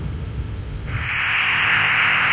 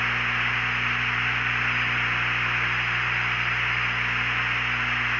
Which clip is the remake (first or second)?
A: first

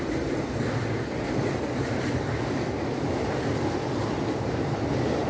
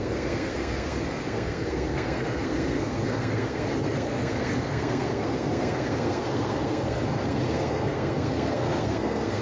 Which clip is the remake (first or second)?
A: second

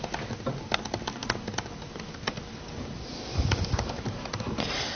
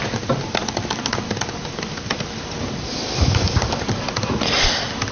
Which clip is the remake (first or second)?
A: second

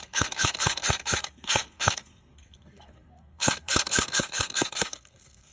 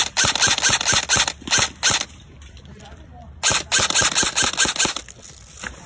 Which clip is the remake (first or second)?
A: first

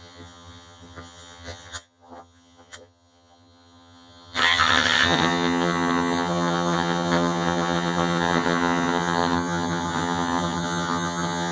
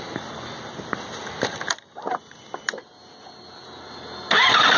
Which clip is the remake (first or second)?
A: first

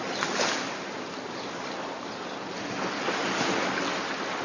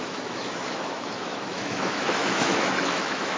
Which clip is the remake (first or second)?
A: second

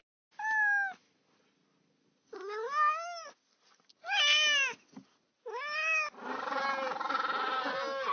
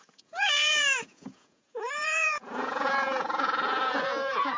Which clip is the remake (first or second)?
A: second